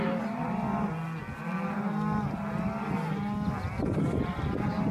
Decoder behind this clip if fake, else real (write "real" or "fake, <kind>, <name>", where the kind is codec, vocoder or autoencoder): real